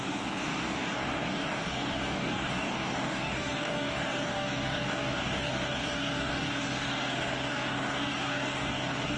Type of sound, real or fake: fake